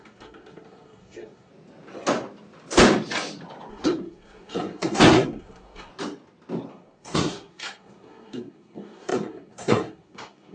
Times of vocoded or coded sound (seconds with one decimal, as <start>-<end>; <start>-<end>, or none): 0.0-1.5; 3.7-5.9; 6.7-10.5